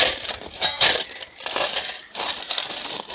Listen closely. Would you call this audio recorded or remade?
remade